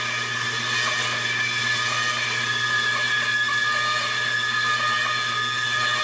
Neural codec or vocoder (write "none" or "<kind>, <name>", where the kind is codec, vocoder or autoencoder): none